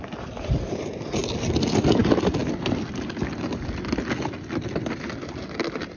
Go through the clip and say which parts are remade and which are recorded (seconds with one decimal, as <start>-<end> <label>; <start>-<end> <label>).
0.0-6.0 recorded